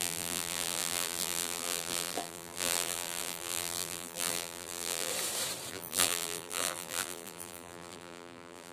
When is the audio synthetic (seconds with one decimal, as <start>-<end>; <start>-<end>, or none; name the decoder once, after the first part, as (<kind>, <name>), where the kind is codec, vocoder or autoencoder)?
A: 0.0-5.1 (vocoder, BigVGAN v2); 5.7-8.7